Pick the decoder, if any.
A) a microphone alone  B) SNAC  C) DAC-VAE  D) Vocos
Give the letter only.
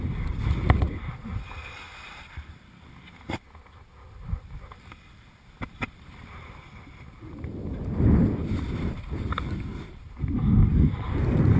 A